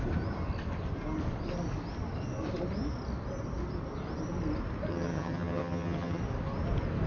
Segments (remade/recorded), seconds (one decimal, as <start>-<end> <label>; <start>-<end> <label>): 0.0-4.9 recorded; 4.9-6.2 remade; 6.2-7.1 recorded